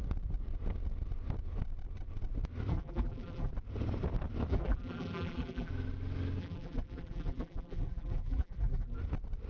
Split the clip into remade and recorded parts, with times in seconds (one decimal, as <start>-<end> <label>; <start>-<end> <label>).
0.0-2.7 recorded; 2.7-3.5 remade; 3.5-4.5 recorded; 4.5-5.7 remade; 5.7-6.4 recorded; 6.4-9.0 remade; 9.0-9.5 recorded